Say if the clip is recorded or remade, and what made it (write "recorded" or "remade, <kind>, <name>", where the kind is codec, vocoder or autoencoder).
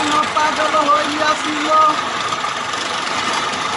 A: remade, vocoder, BigVGAN v2